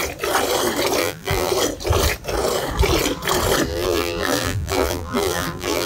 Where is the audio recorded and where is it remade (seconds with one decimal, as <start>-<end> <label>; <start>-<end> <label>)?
0.0-1.0 recorded; 1.0-1.5 remade; 1.5-3.7 recorded; 3.7-5.9 remade